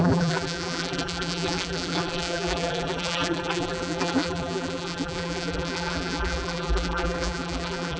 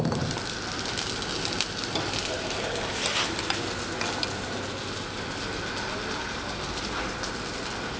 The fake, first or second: first